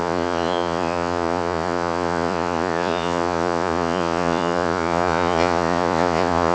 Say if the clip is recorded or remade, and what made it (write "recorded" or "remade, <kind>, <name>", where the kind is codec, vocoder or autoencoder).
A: remade, vocoder, Vocos